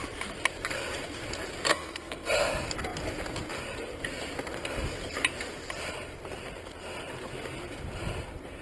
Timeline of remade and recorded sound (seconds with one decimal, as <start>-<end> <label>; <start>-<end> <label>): 0.0-1.7 recorded; 1.7-2.3 remade; 2.3-8.6 recorded